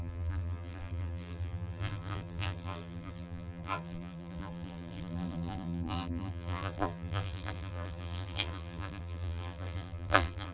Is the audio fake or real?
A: fake